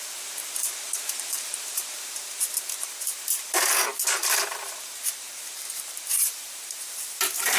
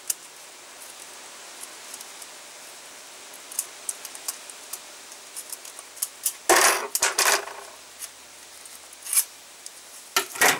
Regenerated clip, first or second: first